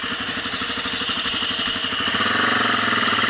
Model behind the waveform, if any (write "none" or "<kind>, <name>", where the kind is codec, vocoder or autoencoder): none